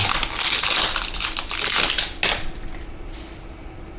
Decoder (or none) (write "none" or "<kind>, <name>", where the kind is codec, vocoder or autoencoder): none